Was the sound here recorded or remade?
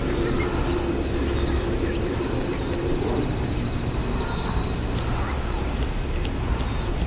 recorded